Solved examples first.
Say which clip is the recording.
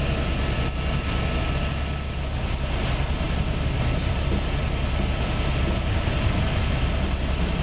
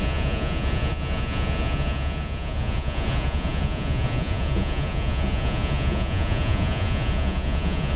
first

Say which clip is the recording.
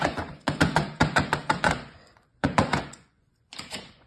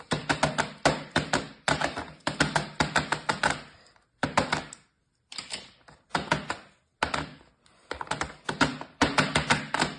second